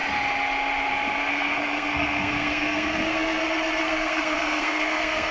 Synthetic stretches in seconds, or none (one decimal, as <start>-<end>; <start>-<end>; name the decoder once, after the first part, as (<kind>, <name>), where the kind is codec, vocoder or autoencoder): 1.3-3.4 (codec, SNAC); 3.8-5.3